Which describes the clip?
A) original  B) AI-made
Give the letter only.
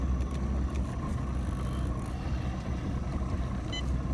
A